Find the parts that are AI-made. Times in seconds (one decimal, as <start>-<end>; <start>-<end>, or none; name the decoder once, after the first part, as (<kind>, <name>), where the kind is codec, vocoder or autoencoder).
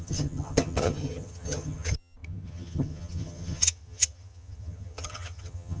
0.0-5.8 (vocoder, HiFi-GAN)